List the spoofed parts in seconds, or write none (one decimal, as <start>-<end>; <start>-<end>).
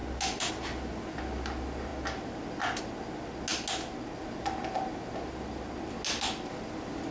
none